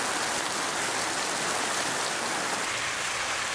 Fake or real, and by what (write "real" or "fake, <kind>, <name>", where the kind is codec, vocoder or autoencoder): real